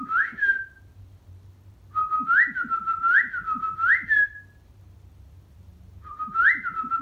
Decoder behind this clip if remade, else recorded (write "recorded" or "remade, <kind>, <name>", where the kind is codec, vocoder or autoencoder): recorded